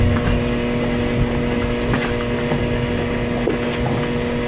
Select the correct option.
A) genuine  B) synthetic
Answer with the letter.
A